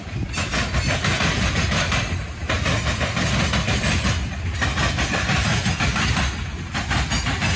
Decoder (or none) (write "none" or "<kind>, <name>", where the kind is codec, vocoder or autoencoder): none